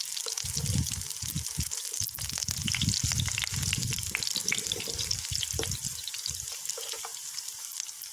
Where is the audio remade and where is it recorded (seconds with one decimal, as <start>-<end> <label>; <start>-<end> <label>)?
0.0-7.1 recorded; 7.1-7.6 remade; 7.6-8.1 recorded